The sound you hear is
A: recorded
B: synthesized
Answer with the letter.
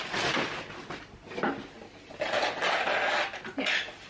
A